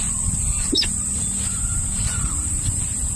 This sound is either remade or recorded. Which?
remade